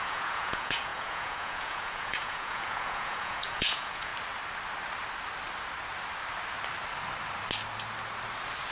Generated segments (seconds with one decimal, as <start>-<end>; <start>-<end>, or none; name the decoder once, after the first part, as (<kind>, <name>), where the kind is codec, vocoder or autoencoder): 0.0-4.1 (vocoder, Vocos)